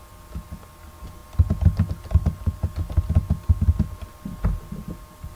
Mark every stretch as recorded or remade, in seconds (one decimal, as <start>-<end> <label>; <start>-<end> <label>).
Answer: 0.0-5.3 recorded